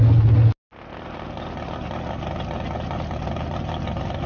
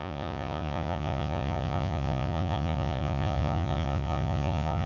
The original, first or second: first